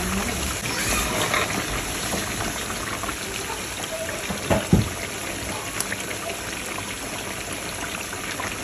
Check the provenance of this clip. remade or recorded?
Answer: recorded